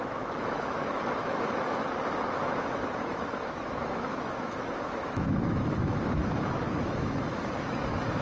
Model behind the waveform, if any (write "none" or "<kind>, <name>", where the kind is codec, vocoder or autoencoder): autoencoder, DAC-VAE